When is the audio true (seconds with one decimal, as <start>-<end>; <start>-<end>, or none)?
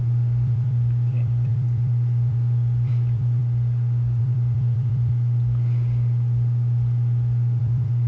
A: 3.4-4.2; 5.1-7.6